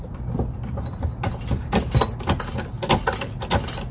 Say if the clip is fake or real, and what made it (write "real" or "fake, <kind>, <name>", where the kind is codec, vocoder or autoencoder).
real